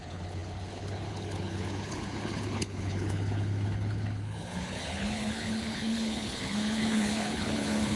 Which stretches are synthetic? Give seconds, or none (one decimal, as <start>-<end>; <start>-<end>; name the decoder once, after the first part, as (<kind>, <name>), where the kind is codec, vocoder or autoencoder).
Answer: 0.0-8.0 (codec, HILCodec)